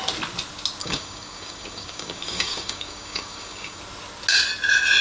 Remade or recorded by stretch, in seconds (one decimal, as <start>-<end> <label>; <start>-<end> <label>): 0.0-0.8 recorded; 0.8-3.8 remade; 3.8-5.0 recorded